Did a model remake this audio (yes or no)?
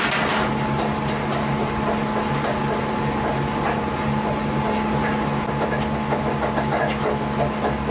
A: no